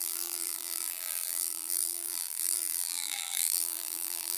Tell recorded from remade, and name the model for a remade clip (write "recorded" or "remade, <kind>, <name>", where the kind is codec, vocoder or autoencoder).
remade, vocoder, BigVGAN v2